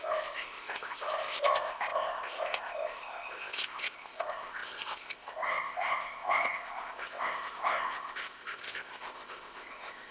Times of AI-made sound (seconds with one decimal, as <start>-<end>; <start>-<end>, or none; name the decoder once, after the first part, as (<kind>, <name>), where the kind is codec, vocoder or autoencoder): 0.0-10.1 (codec, ZipCodec)